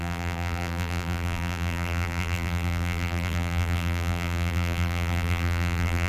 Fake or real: fake